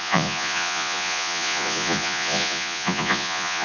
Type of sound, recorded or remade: remade